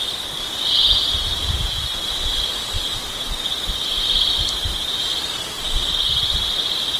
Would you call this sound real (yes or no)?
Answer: yes